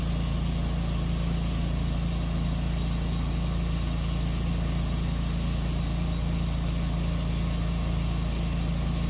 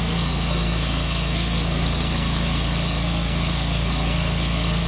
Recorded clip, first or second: first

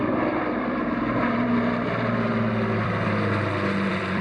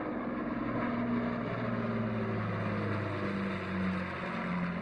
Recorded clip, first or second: second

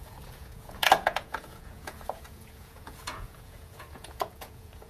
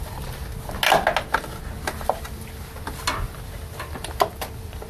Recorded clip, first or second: second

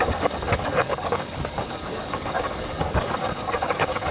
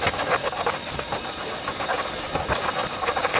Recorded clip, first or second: second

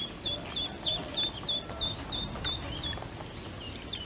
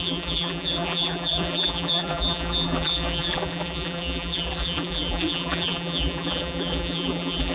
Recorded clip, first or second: first